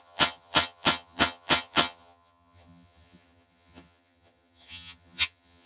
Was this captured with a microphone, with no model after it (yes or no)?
no